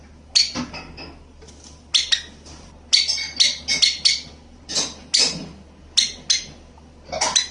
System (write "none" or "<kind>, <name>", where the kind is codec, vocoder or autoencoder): none